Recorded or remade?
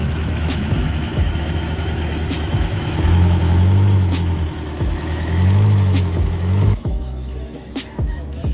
remade